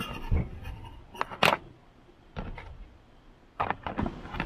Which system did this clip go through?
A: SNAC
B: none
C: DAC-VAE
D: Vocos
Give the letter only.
B